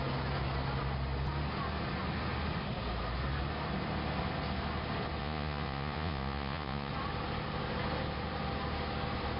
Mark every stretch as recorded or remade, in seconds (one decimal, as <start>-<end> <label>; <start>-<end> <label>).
0.0-5.2 recorded; 5.2-6.9 remade; 6.9-9.4 recorded